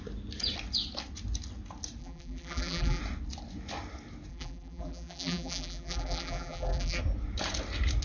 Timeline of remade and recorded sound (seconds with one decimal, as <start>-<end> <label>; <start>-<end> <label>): 0.0-2.0 recorded; 2.0-3.0 remade; 3.0-4.3 recorded; 4.3-7.0 remade; 7.0-8.0 recorded